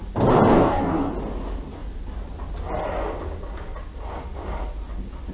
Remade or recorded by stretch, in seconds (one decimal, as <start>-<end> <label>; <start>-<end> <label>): 0.0-0.5 recorded; 0.5-1.1 remade; 1.1-5.3 recorded